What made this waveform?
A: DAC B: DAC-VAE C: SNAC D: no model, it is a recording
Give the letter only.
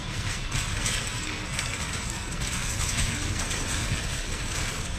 C